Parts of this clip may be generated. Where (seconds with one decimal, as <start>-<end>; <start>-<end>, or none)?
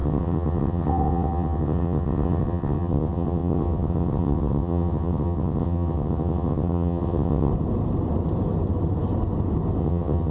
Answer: 0.0-7.5; 9.8-10.3